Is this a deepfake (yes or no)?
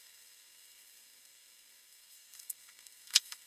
yes